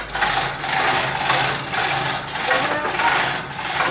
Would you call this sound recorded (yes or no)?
yes